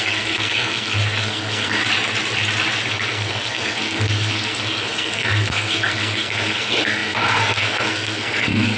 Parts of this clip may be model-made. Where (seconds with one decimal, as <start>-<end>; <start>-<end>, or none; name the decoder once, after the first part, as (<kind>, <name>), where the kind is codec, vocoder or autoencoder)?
0.0-1.8 (codec, SNAC); 2.9-8.8